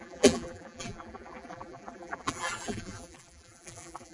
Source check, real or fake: fake